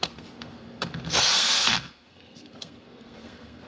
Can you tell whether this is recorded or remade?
remade